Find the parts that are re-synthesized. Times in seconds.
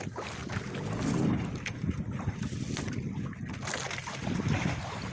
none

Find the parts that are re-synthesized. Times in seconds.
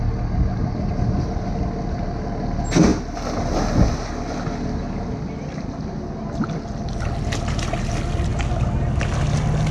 none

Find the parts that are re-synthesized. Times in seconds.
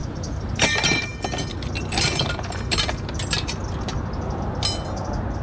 none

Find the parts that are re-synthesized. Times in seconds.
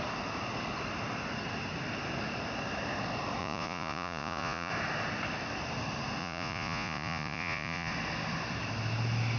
3.4-4.7 (vocoder, Vocos); 6.2-7.9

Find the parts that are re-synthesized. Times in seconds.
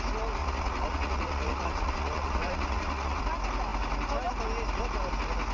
0.4-3.2 (vocoder, Vocos)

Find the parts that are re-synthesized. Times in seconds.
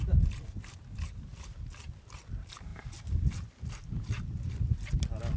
none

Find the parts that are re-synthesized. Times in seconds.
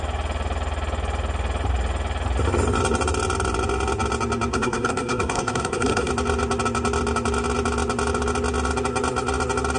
4.5-6.1 (codec, SNAC)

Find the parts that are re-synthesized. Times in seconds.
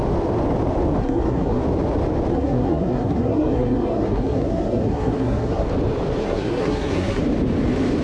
1.0-1.6 (codec, SNAC); 2.3-5.7; 6.2-7.2